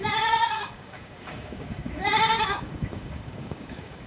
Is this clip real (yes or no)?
no